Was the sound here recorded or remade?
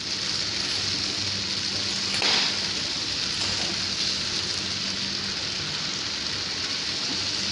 recorded